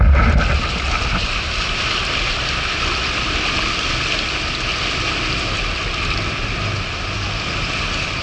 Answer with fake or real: real